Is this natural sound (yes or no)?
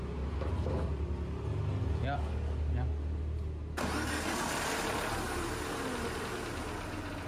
yes